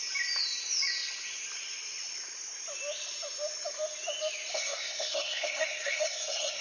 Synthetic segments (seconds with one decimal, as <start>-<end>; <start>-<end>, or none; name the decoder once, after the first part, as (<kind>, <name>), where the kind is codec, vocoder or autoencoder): 4.5-6.6 (codec, SNAC)